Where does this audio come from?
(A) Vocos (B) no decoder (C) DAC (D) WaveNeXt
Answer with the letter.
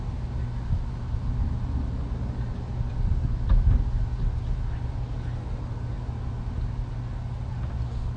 B